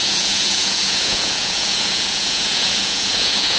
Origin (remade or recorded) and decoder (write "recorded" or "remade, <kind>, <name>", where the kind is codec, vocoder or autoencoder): remade, vocoder, Vocos